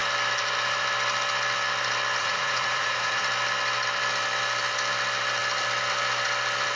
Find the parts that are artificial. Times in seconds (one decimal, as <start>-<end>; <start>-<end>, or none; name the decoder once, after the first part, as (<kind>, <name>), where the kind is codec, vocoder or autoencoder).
2.2-3.2 (vocoder, Vocos)